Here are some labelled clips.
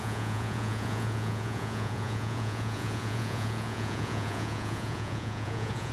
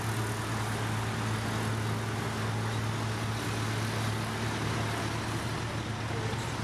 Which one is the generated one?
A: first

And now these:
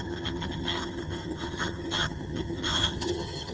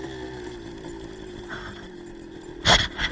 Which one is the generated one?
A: first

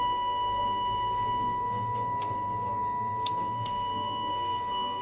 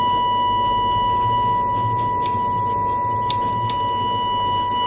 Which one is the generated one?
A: first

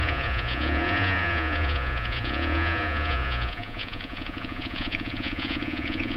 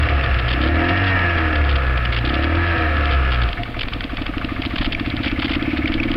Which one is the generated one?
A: first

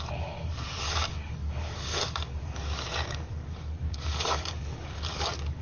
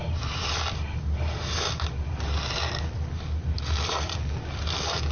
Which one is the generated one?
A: first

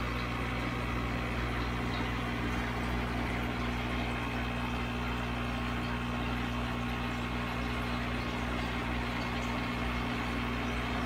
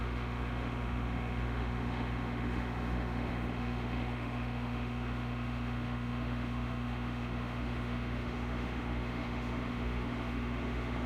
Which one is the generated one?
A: second